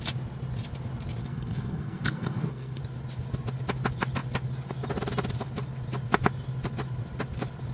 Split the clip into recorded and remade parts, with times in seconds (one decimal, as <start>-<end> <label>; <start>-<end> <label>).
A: 0.0-1.2 recorded; 1.2-2.8 remade; 2.8-7.7 recorded